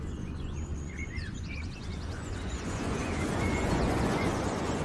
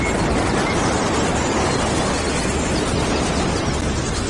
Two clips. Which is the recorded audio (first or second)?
second